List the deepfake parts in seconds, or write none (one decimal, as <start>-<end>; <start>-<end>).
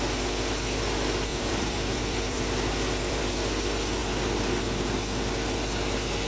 1.3-3.2